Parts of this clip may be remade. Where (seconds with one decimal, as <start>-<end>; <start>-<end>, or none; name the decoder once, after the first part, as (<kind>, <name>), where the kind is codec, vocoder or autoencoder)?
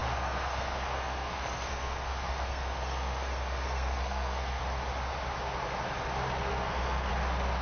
0.0-4.6 (codec, SNAC); 6.5-7.1